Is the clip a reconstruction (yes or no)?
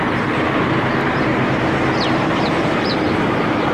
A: yes